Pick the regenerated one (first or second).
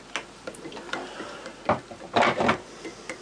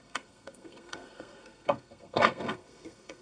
second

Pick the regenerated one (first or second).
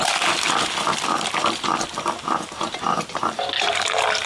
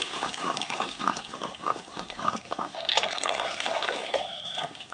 second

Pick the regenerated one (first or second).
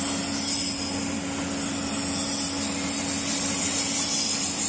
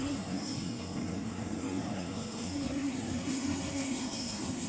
second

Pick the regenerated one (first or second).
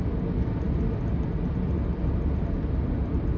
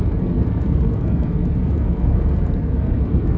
second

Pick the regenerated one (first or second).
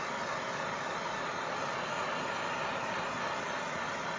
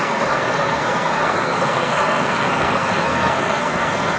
second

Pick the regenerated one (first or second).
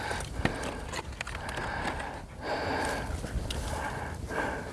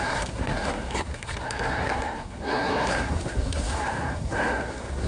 second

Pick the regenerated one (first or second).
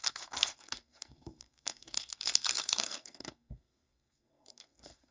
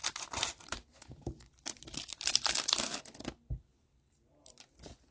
first